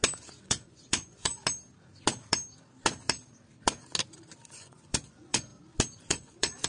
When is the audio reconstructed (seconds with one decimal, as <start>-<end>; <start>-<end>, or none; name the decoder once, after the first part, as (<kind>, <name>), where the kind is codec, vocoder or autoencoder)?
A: 0.5-1.3 (vocoder, Vocos); 4.5-5.5; 6.0-6.7